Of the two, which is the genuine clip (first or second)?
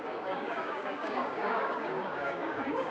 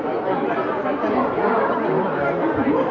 second